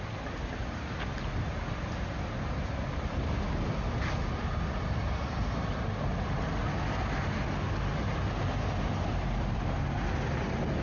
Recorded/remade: recorded